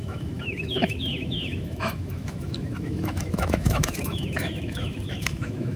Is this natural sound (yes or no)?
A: no